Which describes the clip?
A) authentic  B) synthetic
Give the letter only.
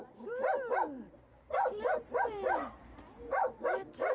B